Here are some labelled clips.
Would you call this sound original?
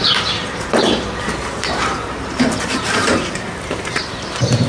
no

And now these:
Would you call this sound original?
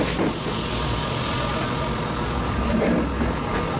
yes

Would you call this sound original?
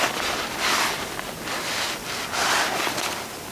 yes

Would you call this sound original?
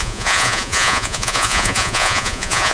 no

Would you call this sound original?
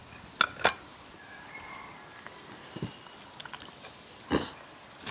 yes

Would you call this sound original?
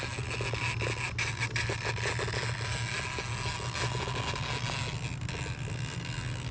yes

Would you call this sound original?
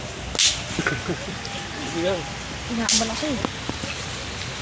yes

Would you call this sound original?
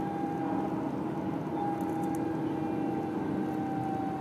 yes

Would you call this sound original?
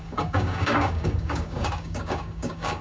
no